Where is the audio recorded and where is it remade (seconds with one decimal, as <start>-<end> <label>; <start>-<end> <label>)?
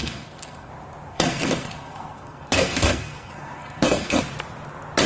0.0-0.7 remade; 0.7-1.1 recorded; 1.1-4.2 remade; 4.2-5.1 recorded